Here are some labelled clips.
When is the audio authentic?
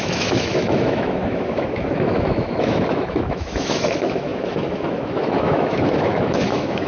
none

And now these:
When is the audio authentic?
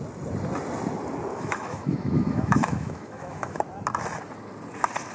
0.0-1.3; 3.6-5.1